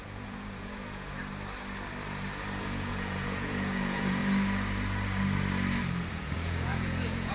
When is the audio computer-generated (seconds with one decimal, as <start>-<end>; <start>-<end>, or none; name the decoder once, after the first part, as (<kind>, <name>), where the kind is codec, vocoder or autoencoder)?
0.0-1.2 (vocoder, Vocos); 2.6-4.2; 6.1-7.3